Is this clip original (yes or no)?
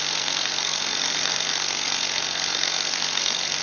no